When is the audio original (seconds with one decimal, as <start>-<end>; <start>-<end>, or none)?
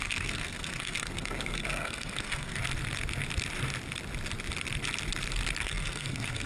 2.6-5.6